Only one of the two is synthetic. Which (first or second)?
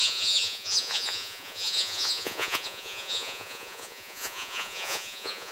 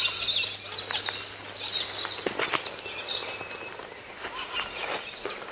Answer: first